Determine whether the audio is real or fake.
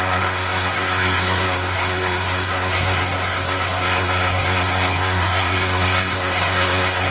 fake